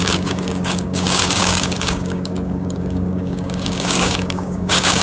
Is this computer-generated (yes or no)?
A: yes